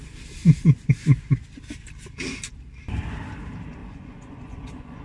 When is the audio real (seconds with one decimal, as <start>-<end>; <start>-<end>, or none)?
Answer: 0.0-3.8